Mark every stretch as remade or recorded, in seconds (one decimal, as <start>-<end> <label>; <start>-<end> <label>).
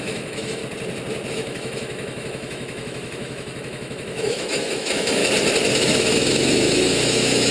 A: 0.0-0.6 remade; 0.6-1.3 recorded; 1.3-5.2 remade; 5.2-5.7 recorded; 5.7-7.5 remade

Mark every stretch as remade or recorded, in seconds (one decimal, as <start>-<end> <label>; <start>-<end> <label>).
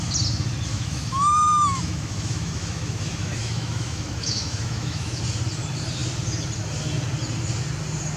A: 0.0-0.7 recorded; 0.7-5.2 remade; 5.2-8.2 recorded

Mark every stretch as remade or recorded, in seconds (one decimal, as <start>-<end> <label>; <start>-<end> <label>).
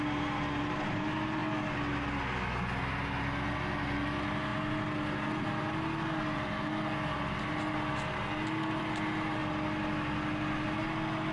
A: 0.0-11.3 recorded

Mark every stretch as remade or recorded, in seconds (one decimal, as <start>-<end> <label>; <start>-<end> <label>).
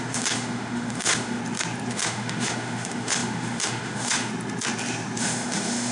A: 0.0-1.4 remade; 1.4-1.9 recorded; 1.9-4.3 remade; 4.3-5.2 recorded; 5.2-5.9 remade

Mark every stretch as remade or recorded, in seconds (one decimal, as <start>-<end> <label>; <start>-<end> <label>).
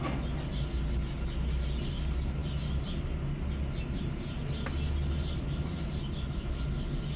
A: 0.0-7.2 recorded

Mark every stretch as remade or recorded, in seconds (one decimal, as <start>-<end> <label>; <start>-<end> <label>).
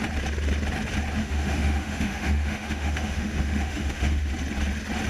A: 0.0-1.2 recorded; 1.2-4.3 remade; 4.3-5.1 recorded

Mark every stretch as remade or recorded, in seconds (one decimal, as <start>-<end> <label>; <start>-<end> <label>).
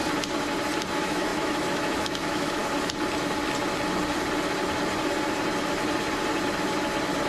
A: 0.0-0.9 recorded; 0.9-2.6 remade; 2.6-7.3 recorded